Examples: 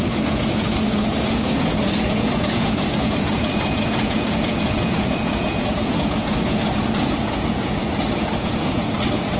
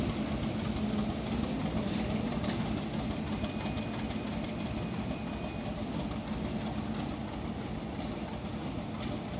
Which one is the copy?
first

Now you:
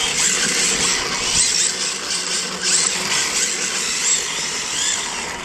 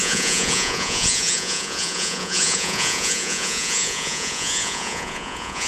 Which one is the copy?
second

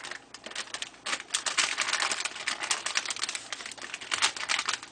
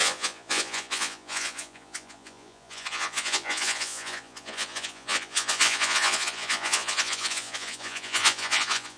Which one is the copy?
second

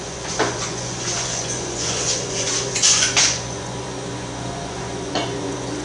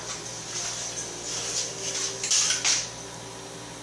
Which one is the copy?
first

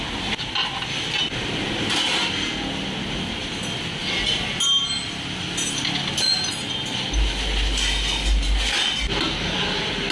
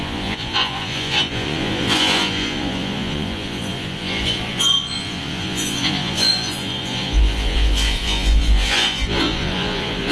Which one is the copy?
second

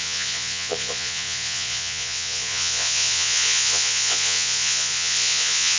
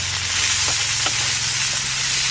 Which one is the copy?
first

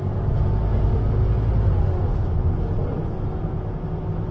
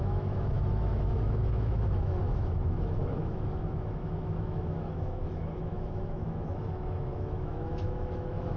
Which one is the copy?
second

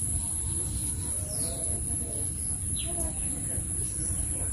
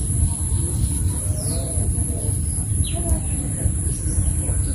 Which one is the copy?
second